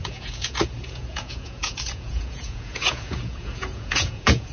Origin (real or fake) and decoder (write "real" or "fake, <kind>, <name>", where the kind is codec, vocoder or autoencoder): fake, vocoder, Vocos